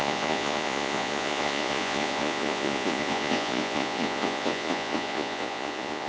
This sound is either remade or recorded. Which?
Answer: remade